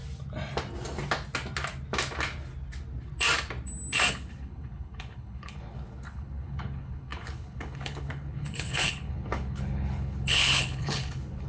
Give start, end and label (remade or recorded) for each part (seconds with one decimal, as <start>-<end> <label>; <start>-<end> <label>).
0.0-4.1 recorded; 4.1-11.5 remade